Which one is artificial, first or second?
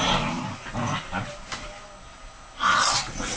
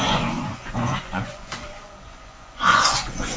second